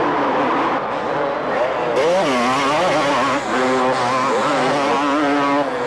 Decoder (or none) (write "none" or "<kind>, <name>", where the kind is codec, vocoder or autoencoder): none